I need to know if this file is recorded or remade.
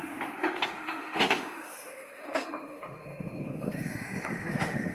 remade